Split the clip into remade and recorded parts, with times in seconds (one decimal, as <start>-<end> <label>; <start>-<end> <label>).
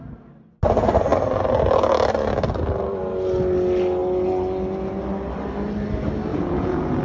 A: 0.0-6.3 recorded; 6.3-7.0 remade